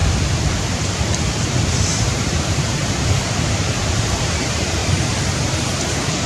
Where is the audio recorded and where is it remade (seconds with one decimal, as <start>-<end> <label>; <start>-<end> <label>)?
0.0-1.7 recorded; 1.7-2.8 remade; 2.8-3.3 recorded; 3.3-4.8 remade; 4.8-6.3 recorded